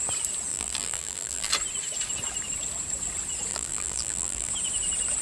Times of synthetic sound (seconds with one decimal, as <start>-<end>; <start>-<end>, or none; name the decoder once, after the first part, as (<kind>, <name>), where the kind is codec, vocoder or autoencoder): 0.5-1.5 (vocoder, BigVGAN v2); 3.5-4.5